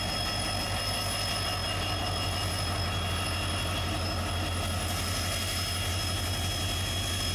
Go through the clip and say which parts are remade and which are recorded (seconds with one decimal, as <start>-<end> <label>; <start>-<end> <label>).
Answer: 0.0-7.3 recorded